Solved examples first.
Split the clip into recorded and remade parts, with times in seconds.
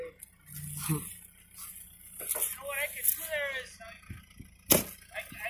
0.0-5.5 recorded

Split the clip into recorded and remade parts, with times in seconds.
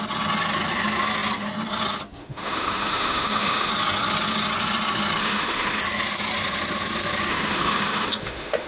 0.0-2.2 recorded; 2.2-3.7 remade; 3.7-5.2 recorded; 5.2-5.8 remade; 5.8-7.3 recorded; 7.3-8.7 remade